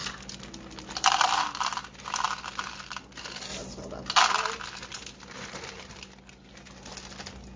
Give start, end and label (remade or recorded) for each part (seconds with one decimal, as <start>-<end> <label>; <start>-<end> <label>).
0.0-7.6 recorded